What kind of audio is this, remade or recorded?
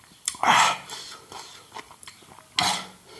recorded